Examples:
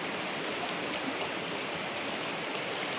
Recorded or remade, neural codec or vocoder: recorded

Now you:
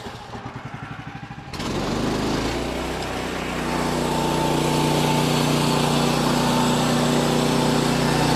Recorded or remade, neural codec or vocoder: recorded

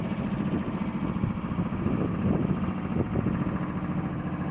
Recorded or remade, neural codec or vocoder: recorded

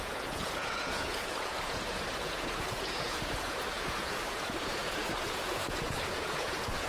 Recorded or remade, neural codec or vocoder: remade, vocoder, Vocos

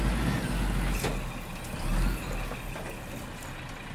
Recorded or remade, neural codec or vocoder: recorded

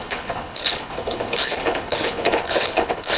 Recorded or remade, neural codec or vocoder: remade, codec, HILCodec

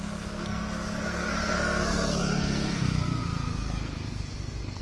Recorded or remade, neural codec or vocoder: remade, codec, SNAC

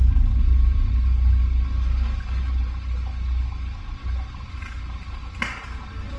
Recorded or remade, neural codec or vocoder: recorded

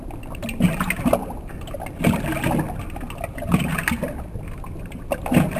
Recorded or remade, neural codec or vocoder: recorded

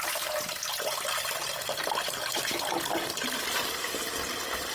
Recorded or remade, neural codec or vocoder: remade, vocoder, BigVGAN v2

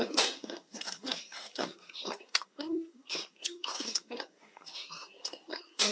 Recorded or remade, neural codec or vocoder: remade, codec, SNAC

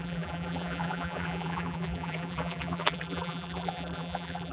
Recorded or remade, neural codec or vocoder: remade, vocoder, BigVGAN v2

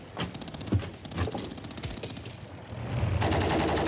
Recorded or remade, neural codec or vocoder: recorded